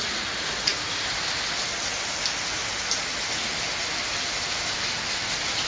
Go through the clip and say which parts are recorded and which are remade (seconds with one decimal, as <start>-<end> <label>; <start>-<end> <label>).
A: 0.0-5.7 recorded